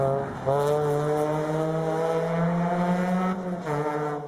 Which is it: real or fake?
real